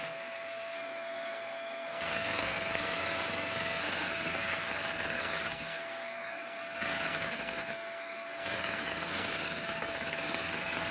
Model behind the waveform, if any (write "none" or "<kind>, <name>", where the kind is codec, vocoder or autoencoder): codec, SNAC